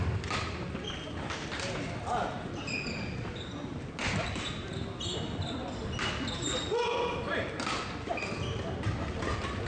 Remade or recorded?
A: recorded